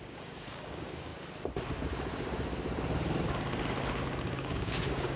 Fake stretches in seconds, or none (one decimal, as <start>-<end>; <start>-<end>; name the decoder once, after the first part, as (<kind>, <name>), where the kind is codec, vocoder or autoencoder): 0.0-1.1 (codec, DAC); 4.2-5.2

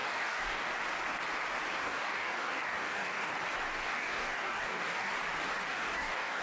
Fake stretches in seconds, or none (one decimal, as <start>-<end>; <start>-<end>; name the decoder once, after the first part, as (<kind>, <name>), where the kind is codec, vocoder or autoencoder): 0.0-0.7 (codec, DAC); 1.8-3.3; 3.8-5.1; 5.7-6.4

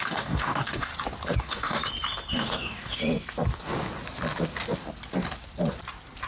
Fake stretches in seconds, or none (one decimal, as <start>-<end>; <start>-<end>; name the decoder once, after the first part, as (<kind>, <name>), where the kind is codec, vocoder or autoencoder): 0.0-0.9 (codec, DAC); 1.4-1.8; 2.3-3.0